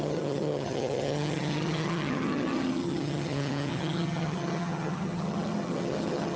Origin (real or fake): fake